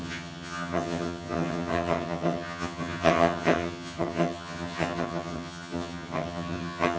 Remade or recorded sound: remade